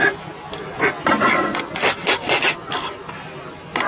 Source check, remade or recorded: recorded